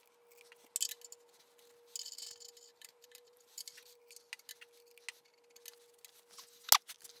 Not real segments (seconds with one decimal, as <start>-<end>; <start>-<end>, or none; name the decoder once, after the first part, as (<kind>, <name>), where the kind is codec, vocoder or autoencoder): 2.7-4.0 (vocoder, BigVGAN v2)